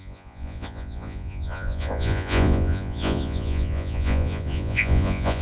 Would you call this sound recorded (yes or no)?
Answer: no